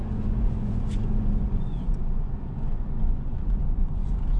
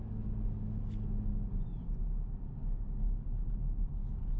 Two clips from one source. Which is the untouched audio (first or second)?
second